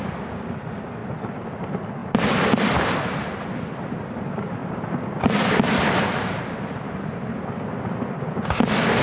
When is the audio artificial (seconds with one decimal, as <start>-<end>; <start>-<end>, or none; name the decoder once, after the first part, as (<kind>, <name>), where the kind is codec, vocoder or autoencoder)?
none